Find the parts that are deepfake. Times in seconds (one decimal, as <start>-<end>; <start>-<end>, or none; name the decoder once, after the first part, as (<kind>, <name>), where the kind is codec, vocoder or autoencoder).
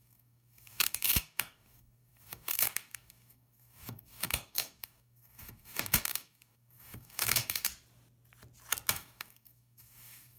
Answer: 0.0-7.7 (codec, DAC); 8.9-10.4